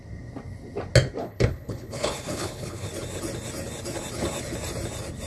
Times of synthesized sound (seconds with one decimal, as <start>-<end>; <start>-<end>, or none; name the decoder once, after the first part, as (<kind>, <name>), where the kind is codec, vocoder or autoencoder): 1.2-2.9 (codec, HILCodec)